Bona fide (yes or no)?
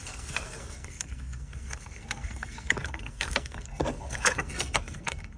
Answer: no